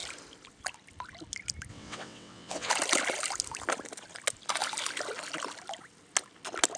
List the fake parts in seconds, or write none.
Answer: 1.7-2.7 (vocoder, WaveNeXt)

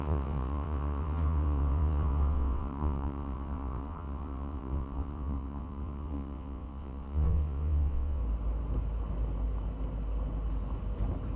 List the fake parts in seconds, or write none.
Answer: 0.0-8.2 (vocoder, WaveNeXt)